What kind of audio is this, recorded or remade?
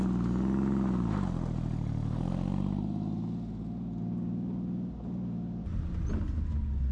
recorded